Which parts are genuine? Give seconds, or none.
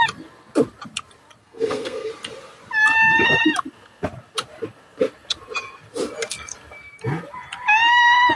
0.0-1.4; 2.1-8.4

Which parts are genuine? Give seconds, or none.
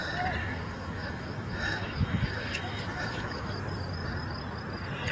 0.0-0.4; 3.5-5.1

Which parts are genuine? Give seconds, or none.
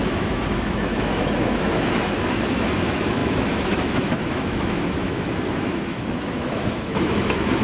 none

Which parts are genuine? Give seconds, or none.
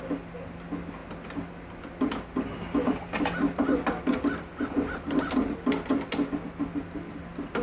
0.0-7.6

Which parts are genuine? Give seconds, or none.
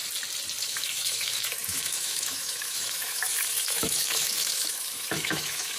0.0-0.6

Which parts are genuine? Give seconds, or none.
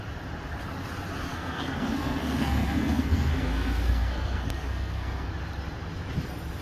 0.0-1.3; 5.3-6.6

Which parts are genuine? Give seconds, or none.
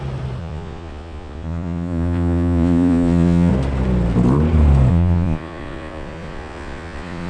0.0-0.4; 3.5-4.9